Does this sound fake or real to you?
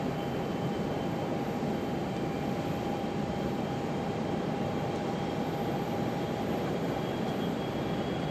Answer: fake